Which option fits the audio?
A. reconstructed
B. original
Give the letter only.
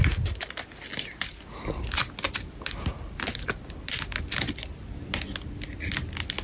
B